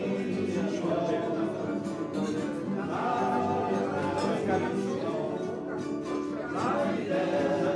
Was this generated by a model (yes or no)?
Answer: no